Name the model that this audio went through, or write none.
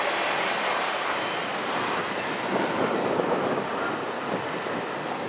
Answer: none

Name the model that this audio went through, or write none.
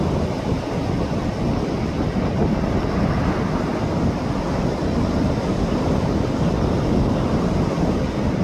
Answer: none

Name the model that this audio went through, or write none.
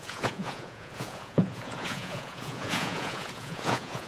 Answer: vocoder, Vocos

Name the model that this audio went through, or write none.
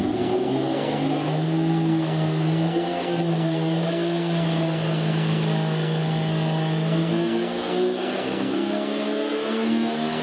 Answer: codec, SNAC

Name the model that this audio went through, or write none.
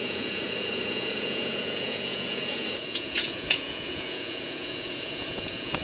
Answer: vocoder, Vocos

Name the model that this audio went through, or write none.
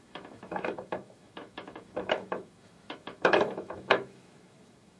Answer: autoencoder, DAC-VAE